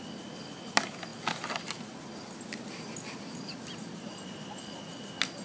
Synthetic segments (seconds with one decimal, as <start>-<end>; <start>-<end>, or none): none